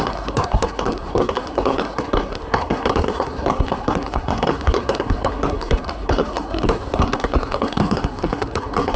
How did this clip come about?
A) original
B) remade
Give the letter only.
B